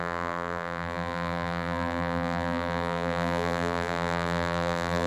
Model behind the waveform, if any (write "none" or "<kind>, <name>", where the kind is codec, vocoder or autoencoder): vocoder, BigVGAN v2